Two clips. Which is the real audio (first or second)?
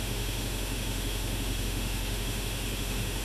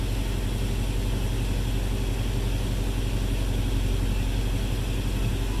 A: second